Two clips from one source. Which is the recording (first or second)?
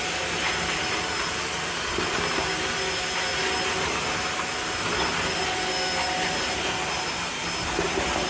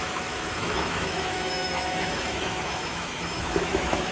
first